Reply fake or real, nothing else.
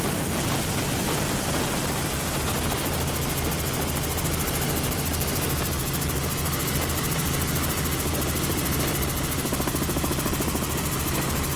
real